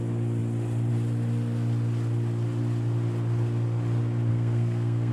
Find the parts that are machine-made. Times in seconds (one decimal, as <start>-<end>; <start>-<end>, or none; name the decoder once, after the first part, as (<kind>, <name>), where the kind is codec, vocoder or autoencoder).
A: 4.3-5.1 (codec, SNAC)